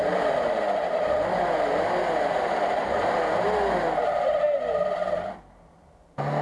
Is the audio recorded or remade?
recorded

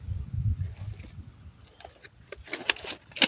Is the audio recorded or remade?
recorded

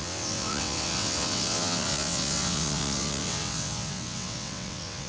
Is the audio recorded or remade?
remade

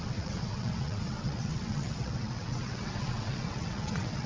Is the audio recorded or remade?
remade